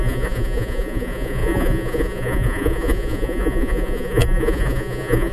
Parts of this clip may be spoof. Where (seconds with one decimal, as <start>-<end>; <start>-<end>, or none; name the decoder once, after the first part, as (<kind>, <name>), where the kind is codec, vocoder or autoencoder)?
0.0-5.3 (vocoder, Vocos)